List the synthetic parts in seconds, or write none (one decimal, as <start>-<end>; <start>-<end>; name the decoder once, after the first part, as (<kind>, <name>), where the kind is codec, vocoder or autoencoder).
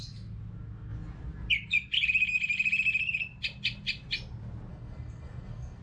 4.7-5.8 (codec, SNAC)